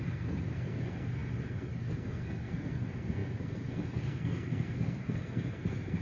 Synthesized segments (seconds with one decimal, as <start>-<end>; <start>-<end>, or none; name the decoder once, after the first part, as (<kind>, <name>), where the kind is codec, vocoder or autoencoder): 0.0-6.0 (codec, SNAC)